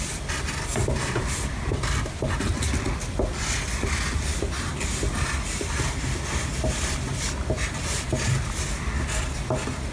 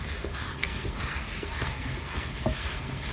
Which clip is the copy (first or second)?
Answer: second